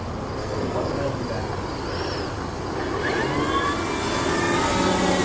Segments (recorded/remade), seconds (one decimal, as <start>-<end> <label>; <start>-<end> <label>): 0.0-0.4 recorded; 0.4-0.9 remade; 0.9-5.2 recorded